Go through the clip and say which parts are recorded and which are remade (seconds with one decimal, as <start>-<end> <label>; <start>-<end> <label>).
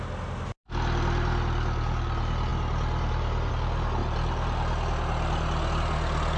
0.0-6.4 recorded